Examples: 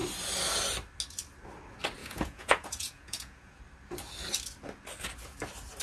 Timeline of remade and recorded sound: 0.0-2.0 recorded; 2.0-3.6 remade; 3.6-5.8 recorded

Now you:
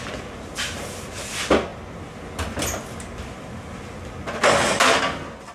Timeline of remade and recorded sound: 0.0-5.5 recorded